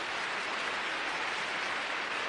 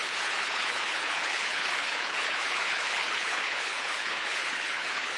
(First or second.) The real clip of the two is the first